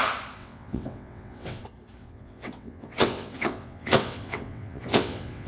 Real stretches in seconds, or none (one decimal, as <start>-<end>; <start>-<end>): 0.0-0.4; 1.6-2.0